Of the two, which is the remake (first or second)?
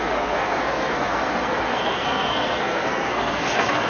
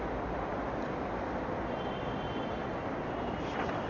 first